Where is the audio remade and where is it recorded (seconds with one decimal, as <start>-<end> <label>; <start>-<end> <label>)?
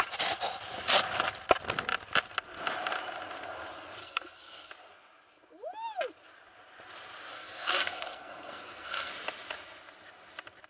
0.0-4.0 recorded; 4.0-4.7 remade; 4.7-7.3 recorded; 7.3-9.1 remade; 9.1-10.7 recorded